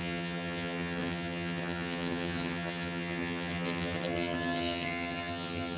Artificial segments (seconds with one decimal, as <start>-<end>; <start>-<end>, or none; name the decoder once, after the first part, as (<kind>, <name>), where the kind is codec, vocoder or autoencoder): 0.0-5.8 (vocoder, HiFi-GAN)